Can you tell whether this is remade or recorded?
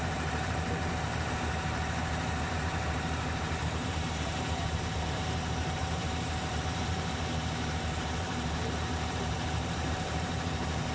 remade